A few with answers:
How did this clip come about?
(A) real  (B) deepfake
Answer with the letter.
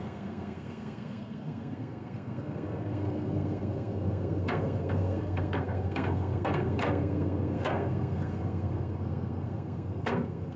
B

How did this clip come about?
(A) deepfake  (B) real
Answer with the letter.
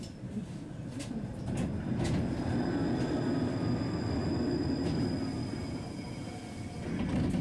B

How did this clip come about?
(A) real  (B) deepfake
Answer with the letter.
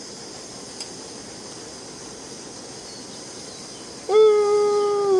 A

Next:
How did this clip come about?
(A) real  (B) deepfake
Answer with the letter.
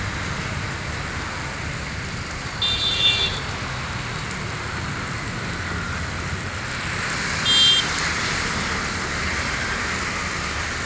A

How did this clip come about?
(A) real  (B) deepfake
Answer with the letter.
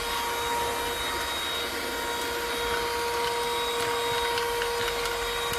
A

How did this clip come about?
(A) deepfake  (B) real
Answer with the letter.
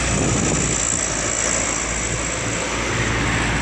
B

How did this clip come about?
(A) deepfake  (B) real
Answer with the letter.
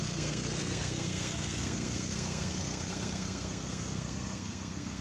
A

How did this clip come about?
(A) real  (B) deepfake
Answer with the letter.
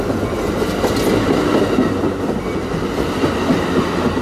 A